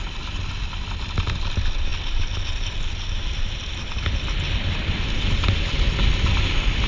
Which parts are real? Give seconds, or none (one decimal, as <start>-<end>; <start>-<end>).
0.0-6.9